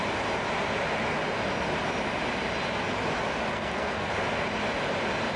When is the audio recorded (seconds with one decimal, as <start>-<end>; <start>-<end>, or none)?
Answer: 0.0-3.5; 4.1-5.4